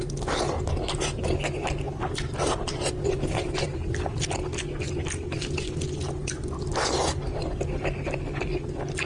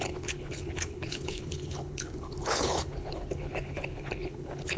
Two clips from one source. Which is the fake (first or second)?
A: second